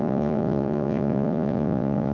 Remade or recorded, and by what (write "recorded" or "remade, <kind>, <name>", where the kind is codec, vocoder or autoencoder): remade, vocoder, Vocos